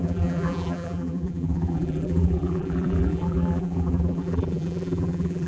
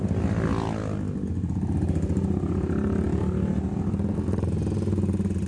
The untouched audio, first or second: second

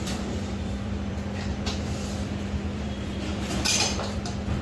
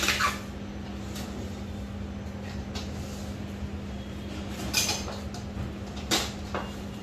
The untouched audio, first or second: second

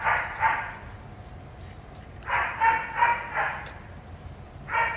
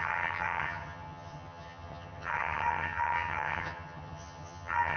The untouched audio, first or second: first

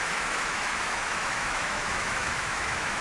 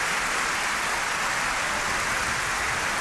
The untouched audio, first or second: second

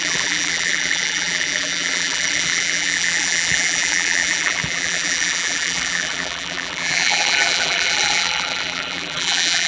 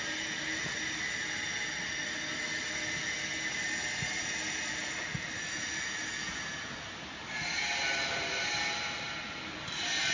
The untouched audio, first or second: second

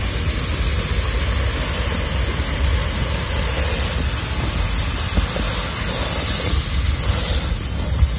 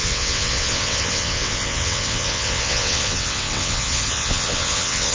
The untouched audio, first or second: first